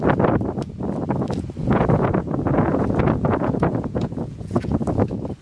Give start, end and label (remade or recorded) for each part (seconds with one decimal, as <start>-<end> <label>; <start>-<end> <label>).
0.0-1.6 recorded; 1.6-4.8 remade; 4.8-5.4 recorded